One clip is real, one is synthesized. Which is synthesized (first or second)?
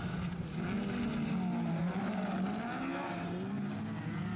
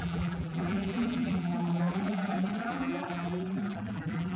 second